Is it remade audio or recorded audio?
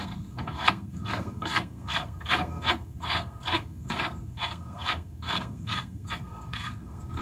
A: remade